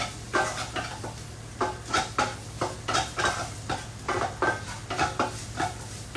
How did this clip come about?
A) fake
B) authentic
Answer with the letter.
B